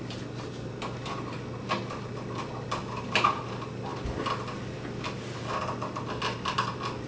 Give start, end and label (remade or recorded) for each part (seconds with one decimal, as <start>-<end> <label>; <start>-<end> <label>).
0.0-7.1 recorded